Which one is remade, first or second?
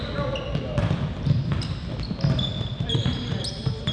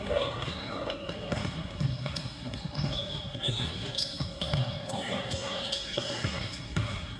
second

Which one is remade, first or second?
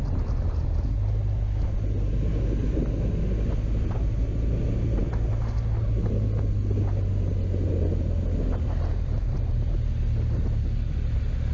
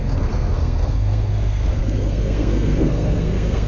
second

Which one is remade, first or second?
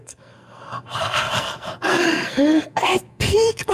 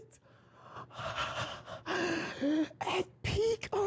first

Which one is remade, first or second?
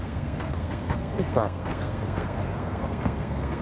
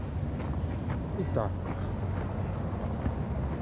first